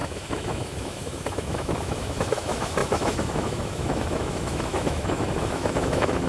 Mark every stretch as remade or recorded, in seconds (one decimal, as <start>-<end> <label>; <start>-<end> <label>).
0.0-6.3 remade